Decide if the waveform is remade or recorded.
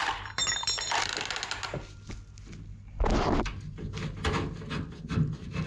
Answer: recorded